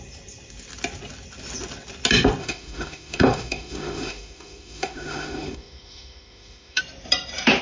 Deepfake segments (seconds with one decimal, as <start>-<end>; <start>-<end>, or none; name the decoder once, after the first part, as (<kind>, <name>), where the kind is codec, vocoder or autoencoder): 2.4-6.8 (autoencoder, DAC-VAE)